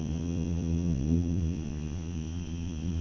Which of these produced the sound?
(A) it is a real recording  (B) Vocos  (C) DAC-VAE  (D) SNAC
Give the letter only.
B